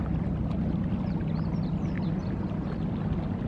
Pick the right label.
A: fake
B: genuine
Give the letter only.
B